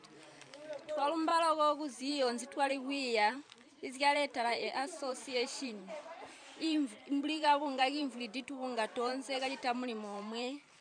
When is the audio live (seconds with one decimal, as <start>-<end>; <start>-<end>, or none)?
1.3-2.1